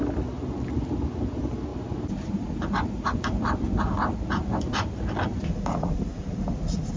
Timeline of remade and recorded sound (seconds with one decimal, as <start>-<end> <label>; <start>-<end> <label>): 0.0-7.0 recorded